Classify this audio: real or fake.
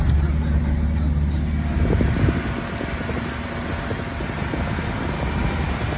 real